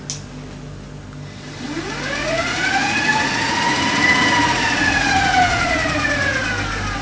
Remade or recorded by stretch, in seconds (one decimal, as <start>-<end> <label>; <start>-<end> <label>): 0.0-2.2 recorded; 2.2-6.4 remade; 6.4-7.0 recorded